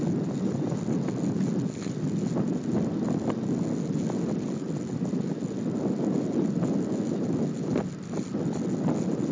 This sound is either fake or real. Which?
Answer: real